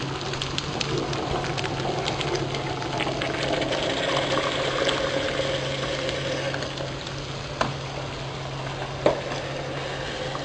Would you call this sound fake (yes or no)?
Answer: no